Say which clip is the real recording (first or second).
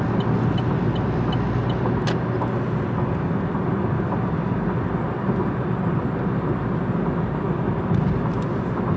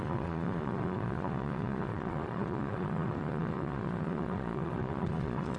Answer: first